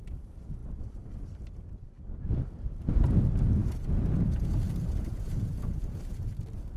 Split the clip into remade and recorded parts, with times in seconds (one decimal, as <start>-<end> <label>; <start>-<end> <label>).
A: 0.0-3.6 recorded; 3.6-6.3 remade; 6.3-6.8 recorded